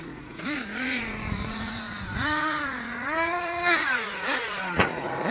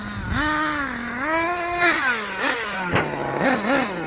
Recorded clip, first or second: second